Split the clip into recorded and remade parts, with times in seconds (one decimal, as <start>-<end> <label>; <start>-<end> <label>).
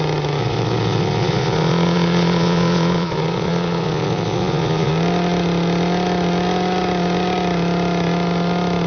0.0-0.4 recorded; 0.4-4.9 remade; 4.9-8.9 recorded